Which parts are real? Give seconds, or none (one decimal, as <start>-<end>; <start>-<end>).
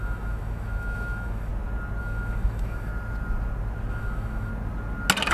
1.5-2.0; 2.9-3.9; 4.5-5.3